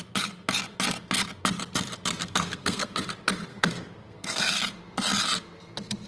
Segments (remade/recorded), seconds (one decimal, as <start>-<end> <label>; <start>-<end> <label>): 0.0-2.2 recorded; 2.2-3.0 remade; 3.0-3.5 recorded; 3.5-4.6 remade; 4.6-6.1 recorded